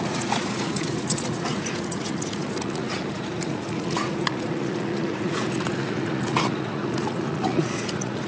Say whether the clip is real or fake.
fake